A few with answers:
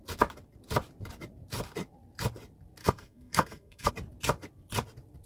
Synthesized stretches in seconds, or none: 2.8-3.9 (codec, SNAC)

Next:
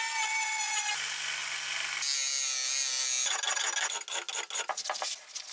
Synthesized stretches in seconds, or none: none

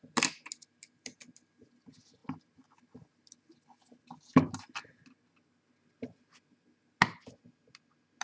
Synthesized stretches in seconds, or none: none